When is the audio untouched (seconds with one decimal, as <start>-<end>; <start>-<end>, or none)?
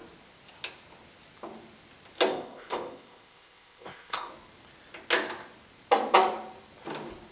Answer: 0.0-2.3; 4.3-7.3